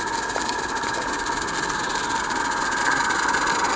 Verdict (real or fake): real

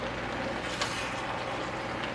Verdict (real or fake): real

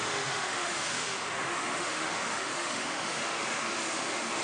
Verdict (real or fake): fake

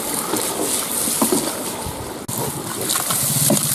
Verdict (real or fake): real